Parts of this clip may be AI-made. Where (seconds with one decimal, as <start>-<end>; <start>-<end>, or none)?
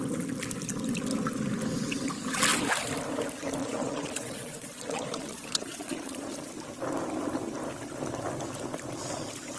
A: 3.6-6.5